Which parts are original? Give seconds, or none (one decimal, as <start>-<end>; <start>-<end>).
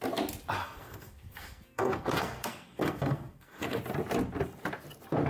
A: 0.0-0.6; 3.8-5.3